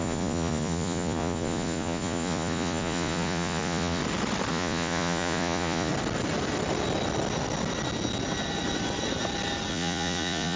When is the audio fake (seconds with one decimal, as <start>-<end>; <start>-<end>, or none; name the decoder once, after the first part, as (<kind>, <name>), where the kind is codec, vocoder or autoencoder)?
0.0-4.0 (vocoder, Vocos); 4.5-5.9; 9.7-10.6